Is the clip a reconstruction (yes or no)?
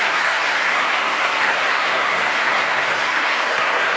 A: yes